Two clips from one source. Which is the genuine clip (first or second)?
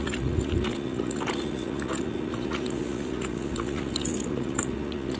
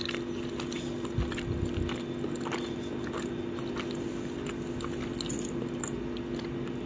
second